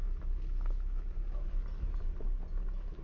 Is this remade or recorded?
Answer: recorded